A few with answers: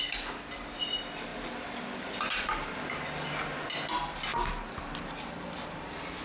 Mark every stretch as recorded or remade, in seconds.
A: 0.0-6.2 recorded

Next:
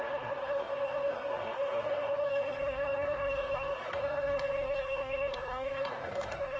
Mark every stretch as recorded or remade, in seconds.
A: 0.0-6.6 remade

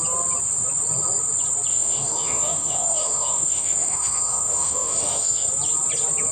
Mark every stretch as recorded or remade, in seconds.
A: 0.0-1.7 recorded; 1.7-5.5 remade; 5.5-6.3 recorded

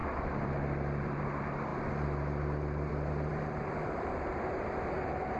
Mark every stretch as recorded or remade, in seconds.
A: 0.0-1.2 remade; 1.2-1.7 recorded; 1.7-2.9 remade; 2.9-3.3 recorded; 3.3-4.3 remade; 4.3-5.4 recorded

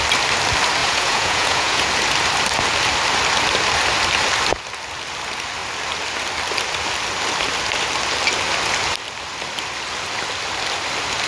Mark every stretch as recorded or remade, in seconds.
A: 0.0-0.8 recorded; 0.8-1.9 remade; 1.9-11.3 recorded

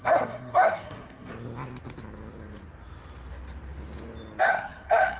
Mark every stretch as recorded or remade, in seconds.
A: 0.0-1.3 remade; 1.3-4.4 recorded; 4.4-5.2 remade

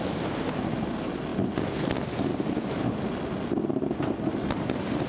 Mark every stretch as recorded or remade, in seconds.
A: 0.0-5.1 recorded

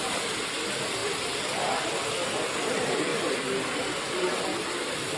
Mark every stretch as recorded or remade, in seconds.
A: 0.0-5.2 recorded